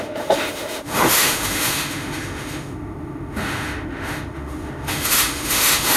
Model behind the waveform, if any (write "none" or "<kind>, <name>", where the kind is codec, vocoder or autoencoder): autoencoder, DAC-VAE